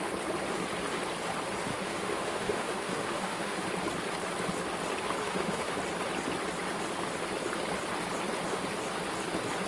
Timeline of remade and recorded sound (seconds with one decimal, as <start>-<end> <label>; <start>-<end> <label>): 0.0-1.7 recorded; 1.7-3.6 remade; 3.6-5.2 recorded; 5.2-5.8 remade; 5.8-9.7 recorded

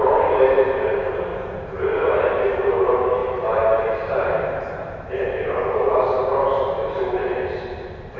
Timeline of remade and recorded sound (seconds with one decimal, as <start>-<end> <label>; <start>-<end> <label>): 0.0-1.3 recorded; 1.3-2.7 remade; 2.7-3.2 recorded; 3.2-5.1 remade; 5.1-6.3 recorded; 6.3-8.2 remade

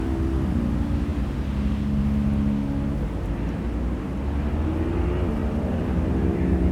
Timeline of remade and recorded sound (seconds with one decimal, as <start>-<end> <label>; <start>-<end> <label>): 0.0-5.4 recorded; 5.4-6.7 remade

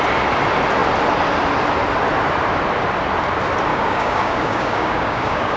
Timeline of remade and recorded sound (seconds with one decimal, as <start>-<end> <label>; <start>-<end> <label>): 0.0-3.7 recorded; 3.7-5.6 remade

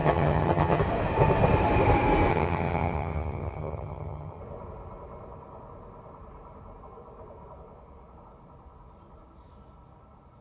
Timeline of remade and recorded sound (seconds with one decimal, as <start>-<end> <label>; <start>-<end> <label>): 0.0-0.8 remade; 0.8-2.3 recorded; 2.3-4.4 remade; 4.4-10.4 recorded

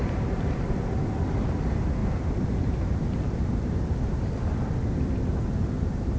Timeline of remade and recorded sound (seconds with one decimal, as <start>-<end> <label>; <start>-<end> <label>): 0.0-1.2 remade; 1.2-2.0 recorded; 2.0-3.5 remade; 3.5-6.2 recorded

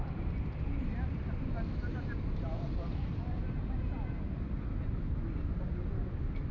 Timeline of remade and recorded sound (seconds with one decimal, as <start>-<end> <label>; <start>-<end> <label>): 0.0-1.8 recorded; 1.8-5.1 remade; 5.1-6.5 recorded

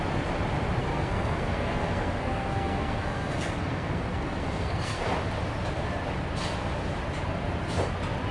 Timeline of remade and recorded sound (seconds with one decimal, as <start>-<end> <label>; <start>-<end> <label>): 0.0-0.8 recorded; 0.8-5.1 remade; 5.1-8.3 recorded